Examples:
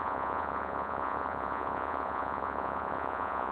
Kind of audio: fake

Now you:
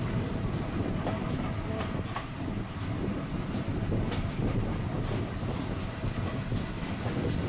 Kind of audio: real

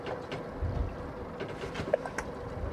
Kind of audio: real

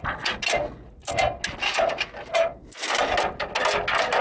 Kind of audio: real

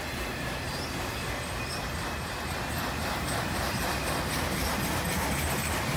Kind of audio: real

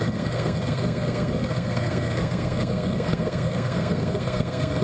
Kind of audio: fake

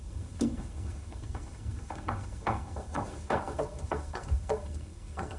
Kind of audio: fake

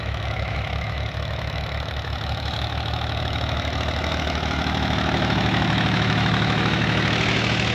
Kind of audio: fake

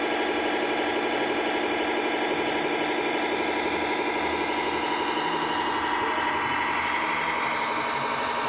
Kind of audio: real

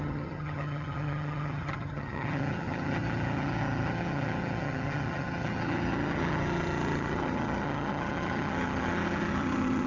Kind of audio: fake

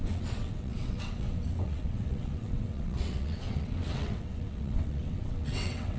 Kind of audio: fake